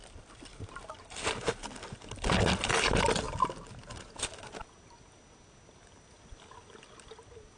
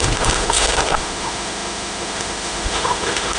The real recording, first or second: first